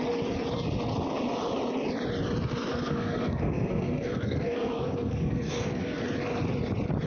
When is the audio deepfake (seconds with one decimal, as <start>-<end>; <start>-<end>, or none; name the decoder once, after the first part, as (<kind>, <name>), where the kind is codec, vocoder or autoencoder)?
2.7-6.0 (codec, SNAC)